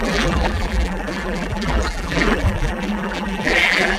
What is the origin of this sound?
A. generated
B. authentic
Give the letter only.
A